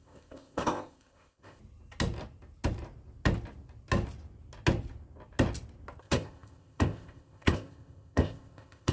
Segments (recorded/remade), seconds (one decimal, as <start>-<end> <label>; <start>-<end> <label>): 0.0-1.6 remade; 1.6-6.0 recorded; 6.0-8.9 remade